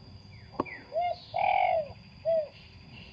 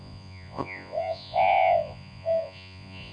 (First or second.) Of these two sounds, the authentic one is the first